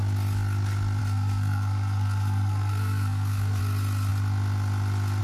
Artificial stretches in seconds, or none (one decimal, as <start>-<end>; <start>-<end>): 1.0-3.6